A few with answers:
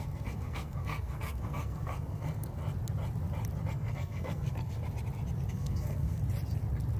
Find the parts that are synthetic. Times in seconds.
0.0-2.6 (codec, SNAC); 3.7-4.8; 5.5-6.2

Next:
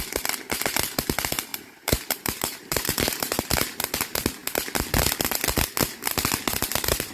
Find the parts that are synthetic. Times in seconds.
1.5-3.4 (vocoder, BigVGAN v2)

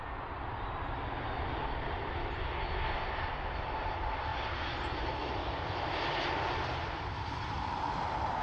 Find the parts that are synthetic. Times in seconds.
none

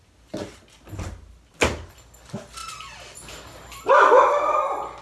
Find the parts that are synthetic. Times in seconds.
none

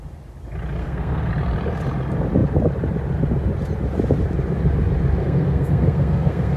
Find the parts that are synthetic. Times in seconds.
0.8-1.3 (codec, SNAC); 5.2-6.6

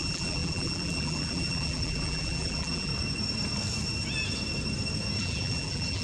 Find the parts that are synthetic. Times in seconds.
0.0-2.9 (vocoder, BigVGAN v2); 5.2-6.0

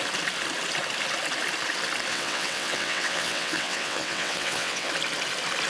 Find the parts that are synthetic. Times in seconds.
2.1-4.9 (vocoder, WaveNeXt)

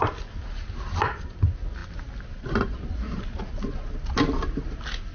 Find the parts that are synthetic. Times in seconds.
none